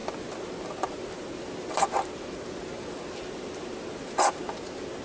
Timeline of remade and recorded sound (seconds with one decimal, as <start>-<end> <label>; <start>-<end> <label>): 0.0-5.0 recorded